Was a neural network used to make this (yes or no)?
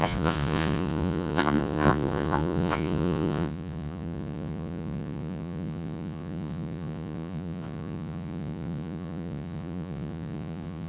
yes